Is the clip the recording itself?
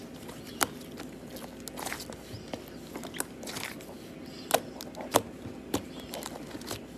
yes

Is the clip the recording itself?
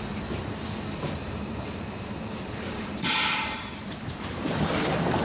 no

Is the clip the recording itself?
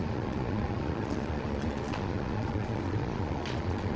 no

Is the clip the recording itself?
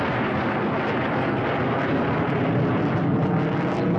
yes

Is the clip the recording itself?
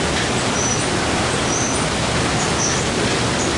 yes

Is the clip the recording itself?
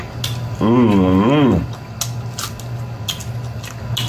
yes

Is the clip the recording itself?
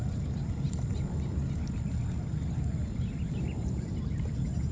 yes